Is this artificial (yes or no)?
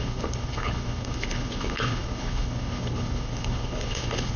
yes